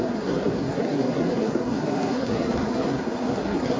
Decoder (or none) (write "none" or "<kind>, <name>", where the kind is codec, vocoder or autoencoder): codec, SNAC